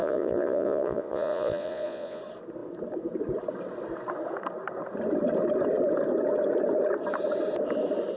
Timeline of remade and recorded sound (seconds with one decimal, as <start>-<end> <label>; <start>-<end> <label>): 0.0-2.2 remade; 2.2-8.2 recorded